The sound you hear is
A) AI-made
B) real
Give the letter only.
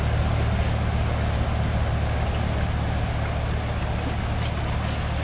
B